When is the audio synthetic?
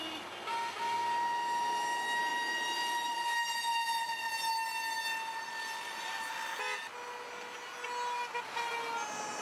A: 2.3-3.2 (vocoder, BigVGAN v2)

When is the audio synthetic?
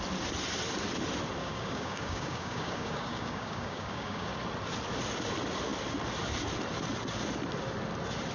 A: 1.4-4.4 (codec, DAC)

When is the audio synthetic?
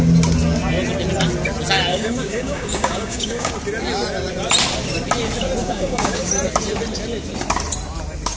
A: 1.9-3.5 (codec, DAC); 5.6-6.3